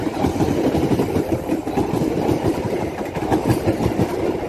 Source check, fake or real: fake